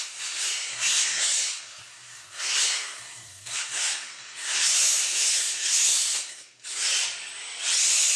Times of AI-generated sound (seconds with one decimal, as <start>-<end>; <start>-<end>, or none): 0.0-6.9